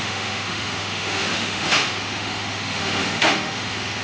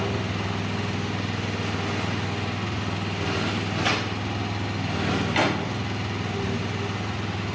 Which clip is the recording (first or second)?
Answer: second